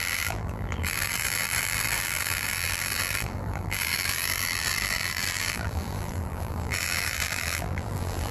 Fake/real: fake